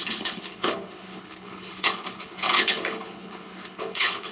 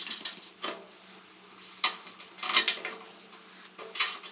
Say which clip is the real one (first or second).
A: second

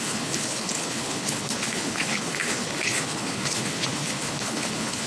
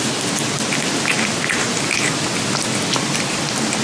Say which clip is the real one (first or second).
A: second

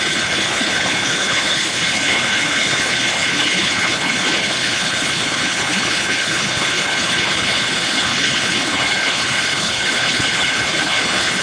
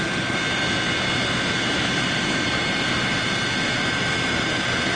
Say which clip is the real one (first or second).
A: second